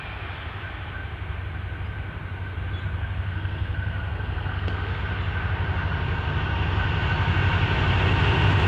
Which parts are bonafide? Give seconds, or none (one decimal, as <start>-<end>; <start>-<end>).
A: 0.0-2.8; 5.0-8.7